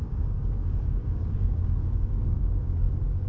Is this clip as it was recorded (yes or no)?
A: no